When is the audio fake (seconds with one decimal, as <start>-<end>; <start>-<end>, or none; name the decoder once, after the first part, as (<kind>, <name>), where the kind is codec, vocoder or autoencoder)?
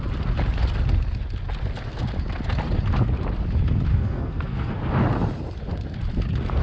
3.9-4.8 (codec, SNAC)